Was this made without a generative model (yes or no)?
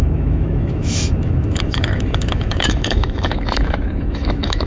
no